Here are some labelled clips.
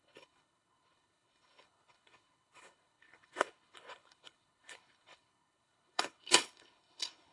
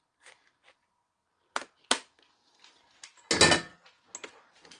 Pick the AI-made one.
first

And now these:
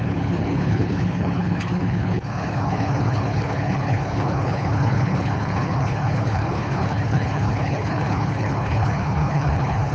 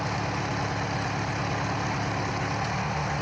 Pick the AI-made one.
first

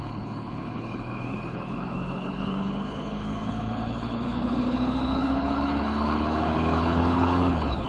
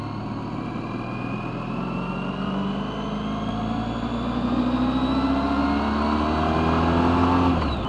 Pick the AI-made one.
first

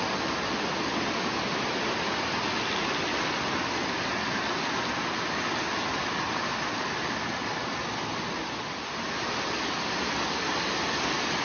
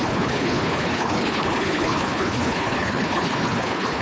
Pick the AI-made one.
second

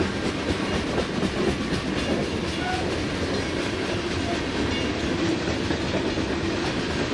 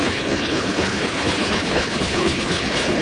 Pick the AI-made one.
second